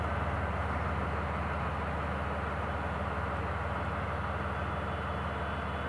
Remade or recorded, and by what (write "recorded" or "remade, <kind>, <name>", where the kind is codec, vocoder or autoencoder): recorded